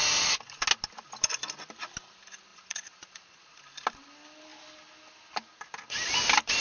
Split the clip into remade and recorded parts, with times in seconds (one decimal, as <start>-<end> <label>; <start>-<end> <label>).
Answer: 0.0-2.5 recorded; 2.5-3.6 remade; 3.6-6.6 recorded